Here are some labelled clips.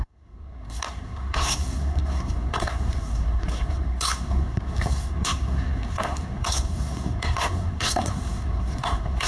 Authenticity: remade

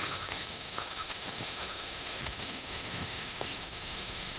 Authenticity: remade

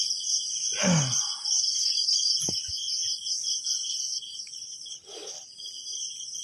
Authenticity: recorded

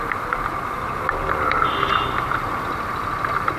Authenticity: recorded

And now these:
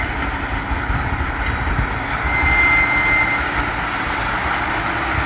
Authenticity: recorded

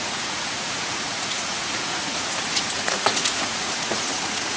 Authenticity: remade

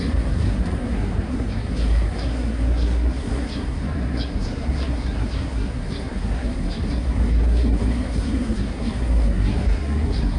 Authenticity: remade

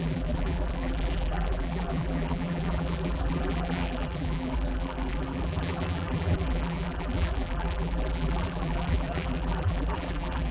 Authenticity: remade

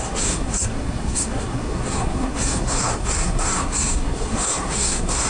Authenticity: remade